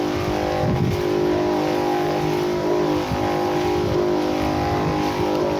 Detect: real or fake real